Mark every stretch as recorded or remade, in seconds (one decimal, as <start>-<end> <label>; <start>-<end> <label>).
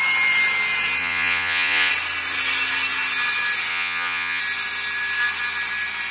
0.0-1.0 recorded; 1.0-1.9 remade; 1.9-3.7 recorded; 3.7-4.4 remade; 4.4-6.1 recorded